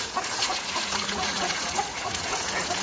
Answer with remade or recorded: remade